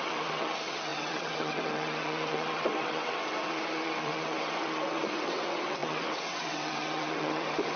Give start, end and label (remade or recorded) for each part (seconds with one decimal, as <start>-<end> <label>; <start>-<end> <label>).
0.0-7.8 remade